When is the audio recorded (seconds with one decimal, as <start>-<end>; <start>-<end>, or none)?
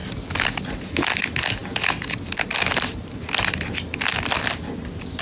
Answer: 0.0-5.2